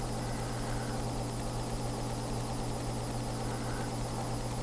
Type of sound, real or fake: real